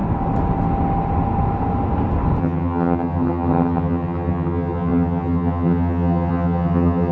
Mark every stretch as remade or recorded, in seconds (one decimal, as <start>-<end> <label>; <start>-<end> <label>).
0.0-2.4 recorded; 2.4-7.1 remade